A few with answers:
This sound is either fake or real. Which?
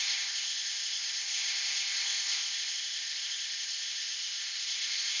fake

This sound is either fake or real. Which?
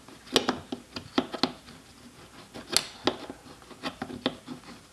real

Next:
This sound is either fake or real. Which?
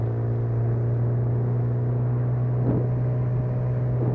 real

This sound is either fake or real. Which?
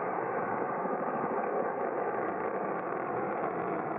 fake